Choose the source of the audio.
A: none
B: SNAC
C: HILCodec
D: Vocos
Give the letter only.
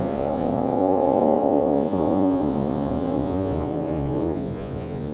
D